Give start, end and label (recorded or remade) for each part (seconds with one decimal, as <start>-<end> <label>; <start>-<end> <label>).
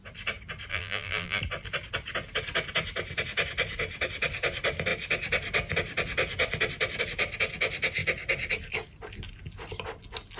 0.0-0.7 recorded; 0.7-1.4 remade; 1.4-10.4 recorded